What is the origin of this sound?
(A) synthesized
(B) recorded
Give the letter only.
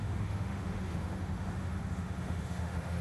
A